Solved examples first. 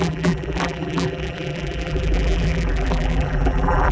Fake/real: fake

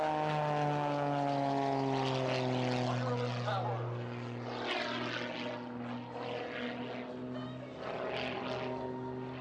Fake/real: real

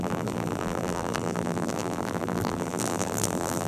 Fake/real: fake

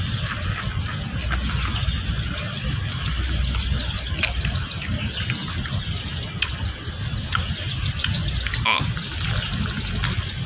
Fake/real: real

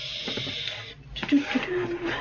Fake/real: real